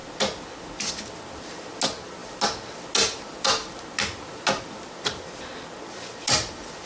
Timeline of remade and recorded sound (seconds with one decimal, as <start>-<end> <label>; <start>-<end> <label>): 0.0-6.9 recorded